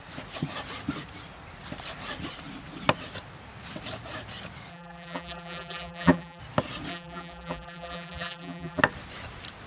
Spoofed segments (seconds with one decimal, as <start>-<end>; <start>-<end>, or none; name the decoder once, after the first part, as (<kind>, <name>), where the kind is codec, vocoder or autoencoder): 4.7-6.4 (vocoder, BigVGAN v2); 6.9-8.8